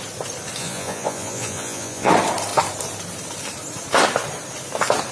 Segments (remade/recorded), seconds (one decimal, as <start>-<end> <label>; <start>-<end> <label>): 0.0-0.6 recorded; 0.6-2.1 remade; 2.1-5.1 recorded